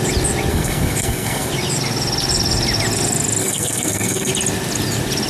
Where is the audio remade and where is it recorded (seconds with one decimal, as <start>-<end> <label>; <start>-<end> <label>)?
0.0-0.5 recorded; 0.5-1.5 remade; 1.5-3.4 recorded; 3.4-4.3 remade; 4.3-5.3 recorded

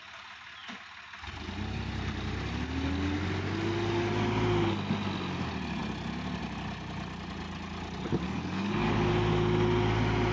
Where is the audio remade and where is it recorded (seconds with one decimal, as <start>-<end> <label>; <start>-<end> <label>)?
0.0-8.1 recorded; 8.1-9.1 remade; 9.1-10.3 recorded

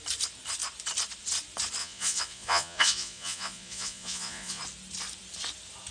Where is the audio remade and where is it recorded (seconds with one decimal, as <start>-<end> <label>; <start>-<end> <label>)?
0.0-1.8 recorded; 1.8-4.6 remade; 4.6-5.9 recorded

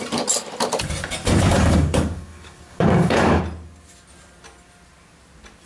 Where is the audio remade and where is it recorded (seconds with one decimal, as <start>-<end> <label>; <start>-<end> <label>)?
0.0-1.5 recorded; 1.5-3.4 remade; 3.4-5.7 recorded